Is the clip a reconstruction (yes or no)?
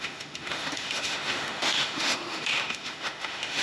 yes